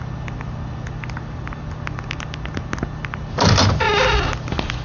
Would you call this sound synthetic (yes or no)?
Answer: no